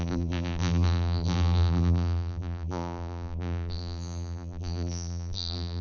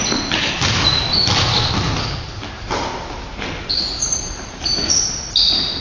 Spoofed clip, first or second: first